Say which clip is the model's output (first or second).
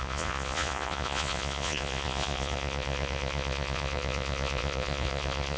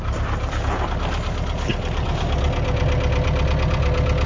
first